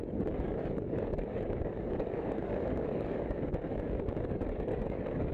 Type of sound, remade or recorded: remade